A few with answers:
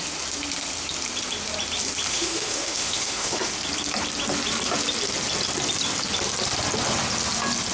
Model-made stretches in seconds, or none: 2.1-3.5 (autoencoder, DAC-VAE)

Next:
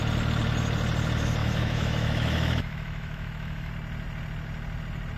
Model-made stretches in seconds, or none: 1.4-3.7 (autoencoder, DAC-VAE)

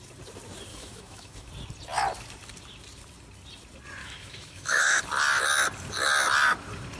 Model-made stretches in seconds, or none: 0.7-1.5 (autoencoder, DAC-VAE); 4.0-5.0

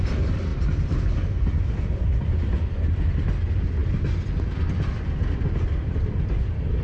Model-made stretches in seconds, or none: none

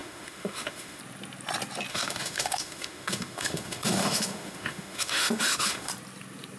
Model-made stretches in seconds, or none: 0.0-1.0 (autoencoder, DAC-VAE); 1.9-5.9